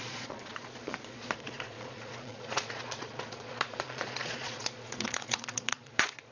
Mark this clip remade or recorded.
remade